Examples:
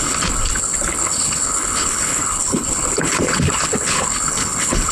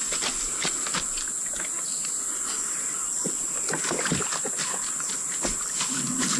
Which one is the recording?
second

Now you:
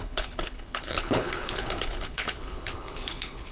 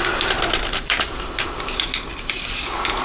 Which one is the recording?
second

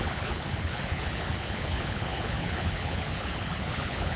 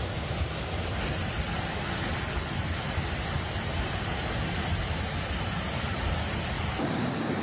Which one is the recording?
second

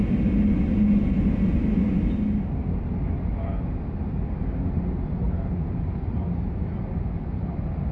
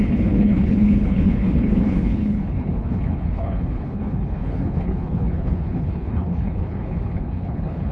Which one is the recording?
first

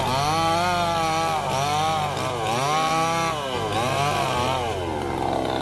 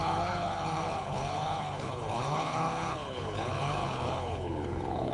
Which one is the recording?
first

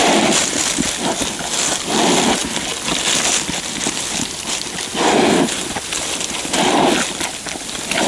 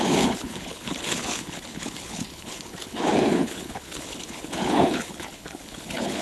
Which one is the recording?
first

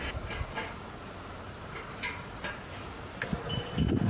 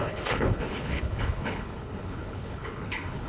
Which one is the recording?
first